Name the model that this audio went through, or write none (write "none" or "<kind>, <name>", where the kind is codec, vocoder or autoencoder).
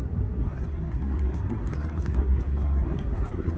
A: codec, SNAC